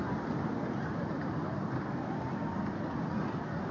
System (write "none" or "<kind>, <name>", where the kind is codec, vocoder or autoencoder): none